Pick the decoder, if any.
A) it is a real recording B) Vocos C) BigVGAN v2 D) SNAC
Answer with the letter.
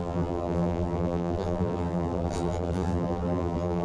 C